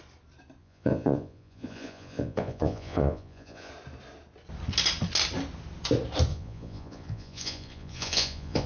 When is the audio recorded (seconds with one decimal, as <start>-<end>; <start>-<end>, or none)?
0.0-0.6; 3.7-6.3